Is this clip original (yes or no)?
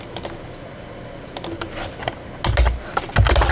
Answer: yes